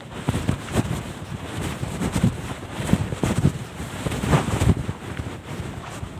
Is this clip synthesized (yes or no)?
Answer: yes